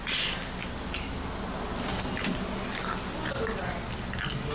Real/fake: real